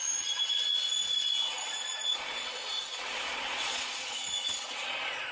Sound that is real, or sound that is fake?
fake